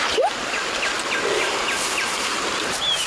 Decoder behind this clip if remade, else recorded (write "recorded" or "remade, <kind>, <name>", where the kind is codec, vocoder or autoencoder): recorded